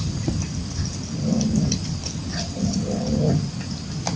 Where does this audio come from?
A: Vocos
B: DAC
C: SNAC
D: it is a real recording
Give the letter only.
D